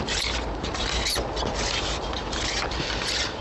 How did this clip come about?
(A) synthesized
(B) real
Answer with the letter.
B